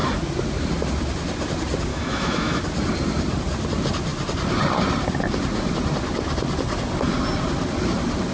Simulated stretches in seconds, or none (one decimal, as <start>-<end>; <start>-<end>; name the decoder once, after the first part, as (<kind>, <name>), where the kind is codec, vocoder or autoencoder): 1.9-2.6 (autoencoder, DAC-VAE)